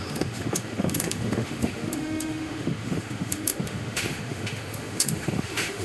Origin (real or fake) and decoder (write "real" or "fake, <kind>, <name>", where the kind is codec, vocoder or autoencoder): fake, autoencoder, DAC-VAE